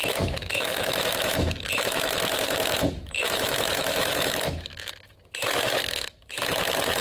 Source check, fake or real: fake